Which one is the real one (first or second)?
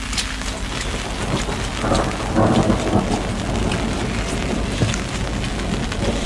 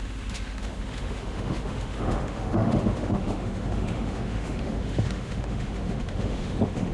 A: first